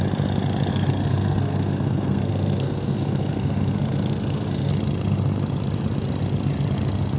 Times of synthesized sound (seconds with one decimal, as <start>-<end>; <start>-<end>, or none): 0.7-4.7